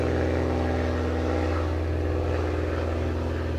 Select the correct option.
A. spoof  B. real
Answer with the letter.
B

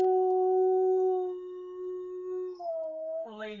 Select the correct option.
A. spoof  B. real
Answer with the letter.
A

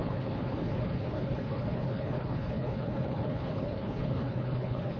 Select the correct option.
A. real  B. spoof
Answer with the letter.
B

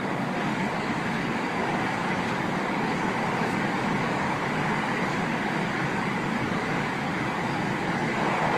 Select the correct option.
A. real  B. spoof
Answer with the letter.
B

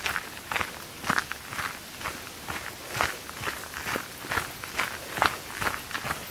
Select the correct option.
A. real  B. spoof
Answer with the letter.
A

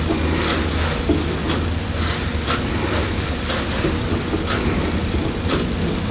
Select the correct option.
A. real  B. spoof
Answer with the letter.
A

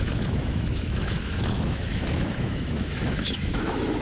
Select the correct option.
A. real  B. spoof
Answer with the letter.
B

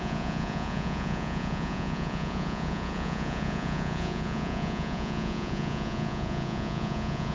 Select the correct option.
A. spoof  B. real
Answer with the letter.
A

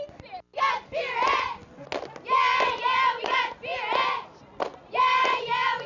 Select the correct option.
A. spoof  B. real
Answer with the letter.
B